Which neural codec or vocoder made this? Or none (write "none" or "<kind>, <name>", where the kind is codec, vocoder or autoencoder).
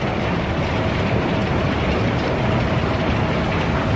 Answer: none